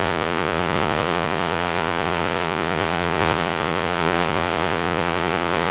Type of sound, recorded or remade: remade